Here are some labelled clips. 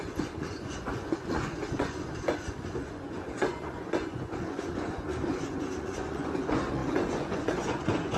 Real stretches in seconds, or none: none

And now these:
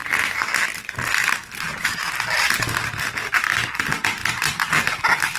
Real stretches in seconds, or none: 0.0-5.4